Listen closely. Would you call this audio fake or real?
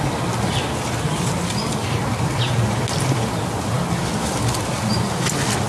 real